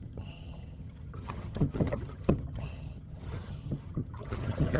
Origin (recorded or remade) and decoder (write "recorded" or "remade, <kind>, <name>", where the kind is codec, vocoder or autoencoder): remade, vocoder, HiFi-GAN